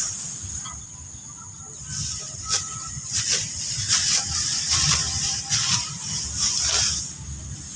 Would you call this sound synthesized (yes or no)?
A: no